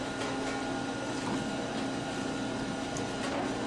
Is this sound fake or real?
real